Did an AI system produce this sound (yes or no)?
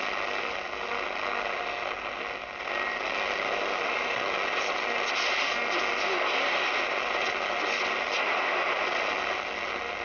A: no